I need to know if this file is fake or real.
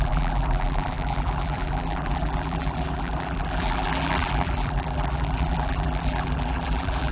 fake